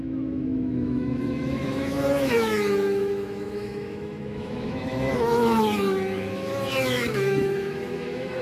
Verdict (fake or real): fake